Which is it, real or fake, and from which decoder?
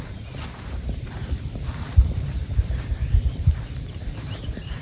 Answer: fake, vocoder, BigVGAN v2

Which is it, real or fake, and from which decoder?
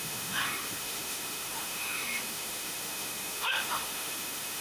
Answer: fake, autoencoder, DAC-VAE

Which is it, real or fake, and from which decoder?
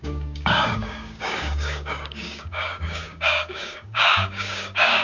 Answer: fake, codec, DAC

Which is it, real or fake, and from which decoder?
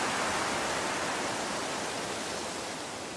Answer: real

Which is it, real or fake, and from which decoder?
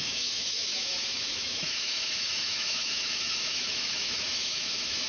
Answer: fake, autoencoder, DAC-VAE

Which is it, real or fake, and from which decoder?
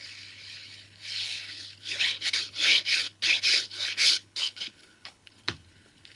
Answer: fake, codec, HILCodec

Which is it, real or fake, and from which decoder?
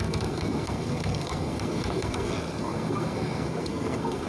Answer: fake, codec, SNAC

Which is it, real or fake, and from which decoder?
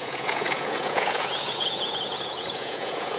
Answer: fake, vocoder, Vocos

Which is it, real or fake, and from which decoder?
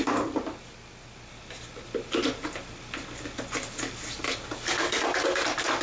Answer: real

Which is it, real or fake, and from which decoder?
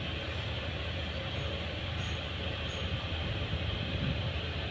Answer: fake, vocoder, BigVGAN v2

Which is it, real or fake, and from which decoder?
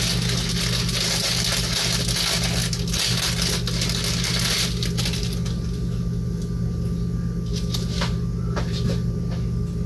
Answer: real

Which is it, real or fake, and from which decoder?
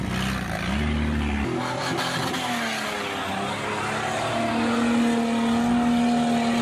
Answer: real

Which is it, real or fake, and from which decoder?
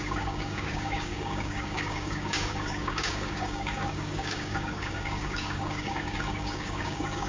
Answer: fake, codec, DAC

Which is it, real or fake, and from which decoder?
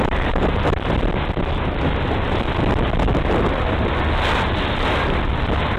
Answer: real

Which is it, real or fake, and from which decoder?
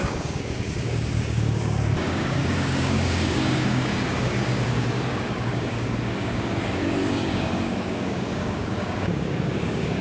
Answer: fake, codec, DAC